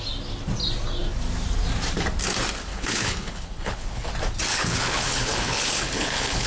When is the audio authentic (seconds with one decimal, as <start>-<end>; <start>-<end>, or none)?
0.0-2.7; 4.1-4.5